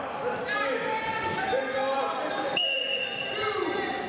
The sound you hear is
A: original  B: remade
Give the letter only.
B